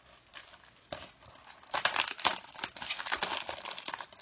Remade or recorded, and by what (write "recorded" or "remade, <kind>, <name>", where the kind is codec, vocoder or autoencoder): recorded